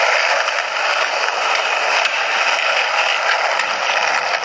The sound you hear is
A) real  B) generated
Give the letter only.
A